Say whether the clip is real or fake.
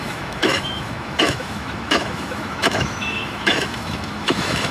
fake